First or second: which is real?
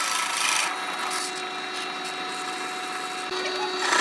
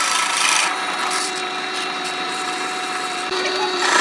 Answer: first